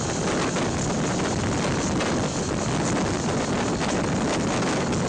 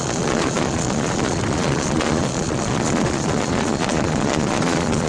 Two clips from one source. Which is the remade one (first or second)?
second